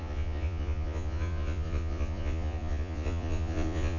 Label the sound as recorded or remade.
remade